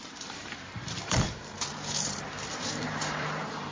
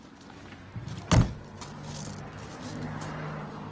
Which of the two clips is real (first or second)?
second